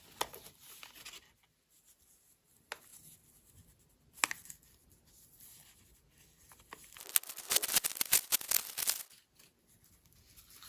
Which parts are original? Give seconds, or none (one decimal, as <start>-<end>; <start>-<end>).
0.0-10.7